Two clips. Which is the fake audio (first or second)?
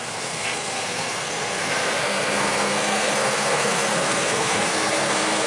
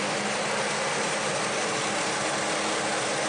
first